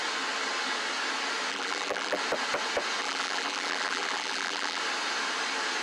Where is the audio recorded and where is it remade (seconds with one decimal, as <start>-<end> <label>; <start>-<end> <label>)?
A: 0.0-1.5 recorded; 1.5-2.2 remade; 2.2-3.0 recorded; 3.0-4.8 remade; 4.8-5.8 recorded